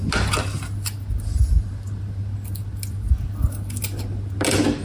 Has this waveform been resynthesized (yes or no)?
no